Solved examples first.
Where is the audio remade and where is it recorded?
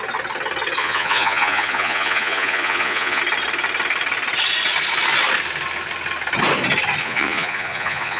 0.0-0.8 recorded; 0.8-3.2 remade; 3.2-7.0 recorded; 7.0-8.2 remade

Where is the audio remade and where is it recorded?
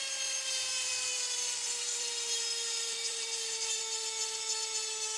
0.0-0.7 recorded; 0.7-3.8 remade; 3.8-5.2 recorded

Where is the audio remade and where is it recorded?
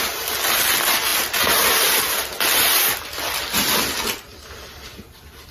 0.0-5.5 recorded